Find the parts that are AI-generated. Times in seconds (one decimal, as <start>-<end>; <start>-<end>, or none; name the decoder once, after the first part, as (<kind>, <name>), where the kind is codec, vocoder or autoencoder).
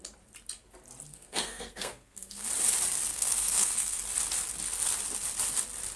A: 1.1-2.5 (codec, SNAC); 3.1-4.0